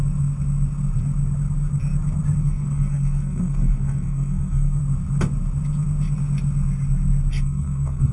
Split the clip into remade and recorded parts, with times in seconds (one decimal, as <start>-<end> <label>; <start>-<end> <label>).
0.0-2.4 recorded; 2.4-4.8 remade; 4.8-7.3 recorded; 7.3-8.1 remade